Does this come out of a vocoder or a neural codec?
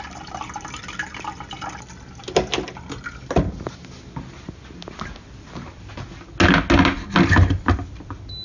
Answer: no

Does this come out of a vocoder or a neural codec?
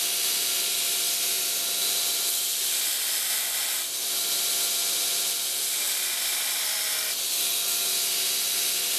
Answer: no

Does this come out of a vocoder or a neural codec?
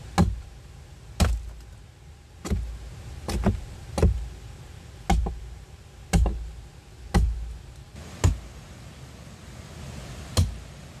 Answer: no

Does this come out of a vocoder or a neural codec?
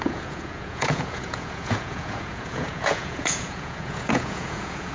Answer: yes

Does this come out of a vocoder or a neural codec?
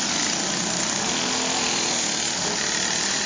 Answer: no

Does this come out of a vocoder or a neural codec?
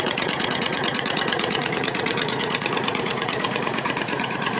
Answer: yes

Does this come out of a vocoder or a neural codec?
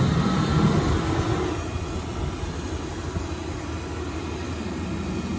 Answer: no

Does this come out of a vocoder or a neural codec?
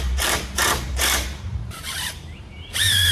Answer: yes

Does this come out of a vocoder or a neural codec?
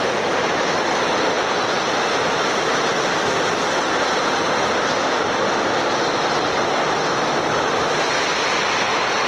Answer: no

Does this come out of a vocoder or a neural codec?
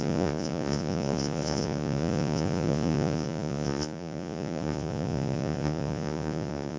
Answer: yes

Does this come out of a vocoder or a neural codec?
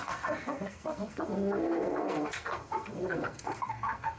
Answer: yes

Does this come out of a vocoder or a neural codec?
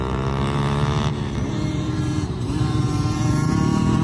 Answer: yes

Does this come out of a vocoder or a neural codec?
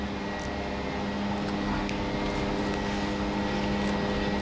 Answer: no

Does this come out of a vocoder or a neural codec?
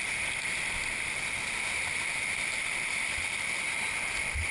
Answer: no